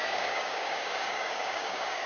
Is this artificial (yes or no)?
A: yes